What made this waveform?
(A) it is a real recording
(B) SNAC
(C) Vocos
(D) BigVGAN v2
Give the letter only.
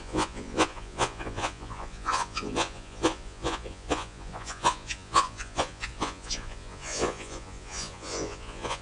C